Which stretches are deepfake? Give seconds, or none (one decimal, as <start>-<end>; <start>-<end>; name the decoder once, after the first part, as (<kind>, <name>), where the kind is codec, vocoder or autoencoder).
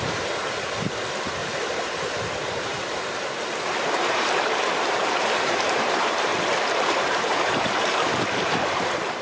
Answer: 0.0-6.3 (vocoder, BigVGAN v2); 6.9-9.2